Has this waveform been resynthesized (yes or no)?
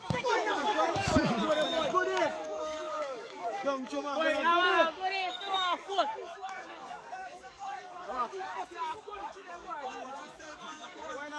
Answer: yes